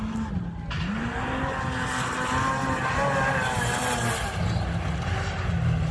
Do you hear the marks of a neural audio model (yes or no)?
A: no